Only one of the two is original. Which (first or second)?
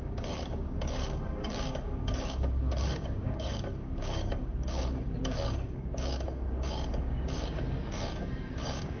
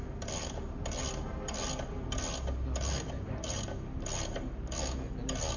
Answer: second